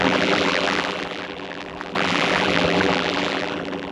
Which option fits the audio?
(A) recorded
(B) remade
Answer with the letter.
B